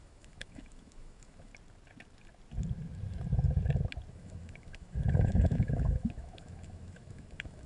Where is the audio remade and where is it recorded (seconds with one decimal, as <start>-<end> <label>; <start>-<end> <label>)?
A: 0.0-1.5 remade; 1.5-4.1 recorded; 4.1-7.7 remade